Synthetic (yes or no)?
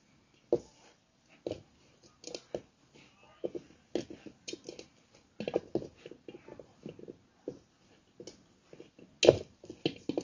no